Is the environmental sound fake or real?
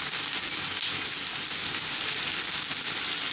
real